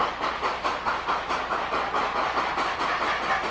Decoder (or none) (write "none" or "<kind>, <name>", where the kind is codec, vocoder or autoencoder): none